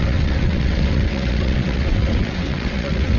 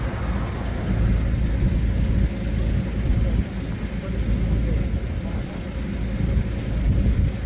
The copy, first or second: first